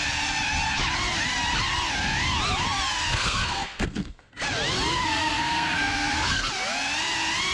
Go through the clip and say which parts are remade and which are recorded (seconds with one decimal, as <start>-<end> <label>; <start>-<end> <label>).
0.0-3.1 recorded; 3.1-4.3 remade; 4.3-5.0 recorded; 5.0-6.5 remade; 6.5-7.5 recorded